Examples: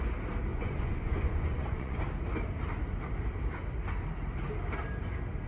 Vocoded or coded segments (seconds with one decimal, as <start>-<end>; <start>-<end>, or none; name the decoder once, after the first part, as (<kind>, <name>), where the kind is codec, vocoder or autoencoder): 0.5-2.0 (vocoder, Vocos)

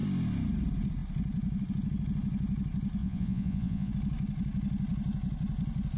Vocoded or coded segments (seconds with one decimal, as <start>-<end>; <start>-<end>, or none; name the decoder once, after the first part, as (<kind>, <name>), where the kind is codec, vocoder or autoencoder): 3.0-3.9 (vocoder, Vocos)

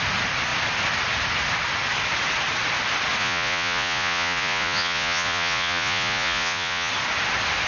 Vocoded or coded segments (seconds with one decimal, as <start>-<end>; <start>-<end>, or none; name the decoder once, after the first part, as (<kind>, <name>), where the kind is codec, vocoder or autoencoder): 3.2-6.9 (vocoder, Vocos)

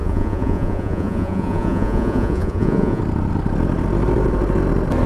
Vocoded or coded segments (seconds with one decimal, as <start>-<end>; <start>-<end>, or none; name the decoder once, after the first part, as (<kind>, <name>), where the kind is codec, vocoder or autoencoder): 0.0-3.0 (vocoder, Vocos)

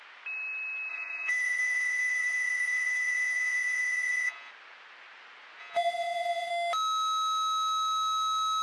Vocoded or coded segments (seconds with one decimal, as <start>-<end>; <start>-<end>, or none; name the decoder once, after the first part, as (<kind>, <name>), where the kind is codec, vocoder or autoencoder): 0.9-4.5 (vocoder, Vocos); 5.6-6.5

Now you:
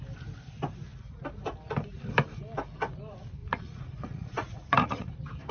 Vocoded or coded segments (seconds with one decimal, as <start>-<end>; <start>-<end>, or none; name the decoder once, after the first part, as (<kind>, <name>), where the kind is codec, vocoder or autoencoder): 3.4-5.1 (vocoder, Vocos)

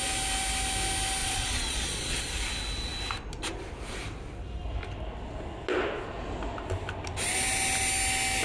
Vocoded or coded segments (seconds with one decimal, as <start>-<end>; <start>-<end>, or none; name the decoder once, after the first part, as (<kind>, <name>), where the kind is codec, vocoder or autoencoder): 1.2-2.2 (vocoder, Vocos)